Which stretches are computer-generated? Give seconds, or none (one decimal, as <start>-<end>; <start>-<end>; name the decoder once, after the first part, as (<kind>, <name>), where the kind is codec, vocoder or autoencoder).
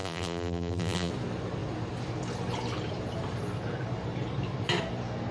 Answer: 0.0-1.1 (vocoder, BigVGAN v2)